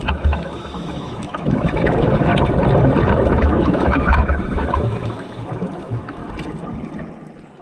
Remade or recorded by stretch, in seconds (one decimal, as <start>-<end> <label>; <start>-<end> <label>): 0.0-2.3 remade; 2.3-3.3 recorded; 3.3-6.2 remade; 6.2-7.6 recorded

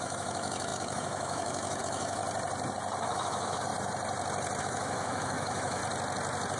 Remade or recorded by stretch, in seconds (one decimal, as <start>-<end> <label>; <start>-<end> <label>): 0.0-2.2 remade; 2.2-3.0 recorded; 3.0-3.7 remade; 3.7-4.6 recorded; 4.6-5.8 remade; 5.8-6.6 recorded

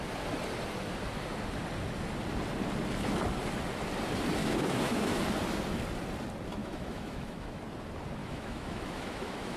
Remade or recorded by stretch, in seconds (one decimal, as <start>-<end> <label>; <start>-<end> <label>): 0.0-4.4 recorded; 4.4-5.2 remade; 5.2-6.6 recorded; 6.6-7.6 remade; 7.6-8.2 recorded; 8.2-9.6 remade